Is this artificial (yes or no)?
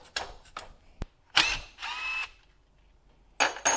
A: no